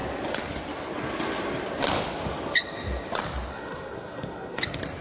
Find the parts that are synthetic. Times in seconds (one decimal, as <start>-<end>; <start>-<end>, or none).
3.5-4.6